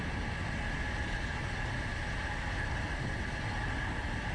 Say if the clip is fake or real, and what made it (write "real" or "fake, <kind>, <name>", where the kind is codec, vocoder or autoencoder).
real